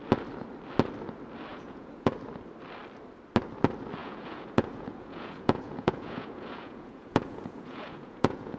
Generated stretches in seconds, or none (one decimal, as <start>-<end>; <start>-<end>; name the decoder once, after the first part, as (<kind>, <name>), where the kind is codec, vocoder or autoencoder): 1.5-2.1 (vocoder, Vocos); 4.0-8.6